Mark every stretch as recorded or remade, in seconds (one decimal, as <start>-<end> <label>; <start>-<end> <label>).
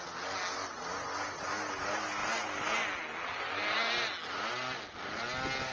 0.0-5.7 recorded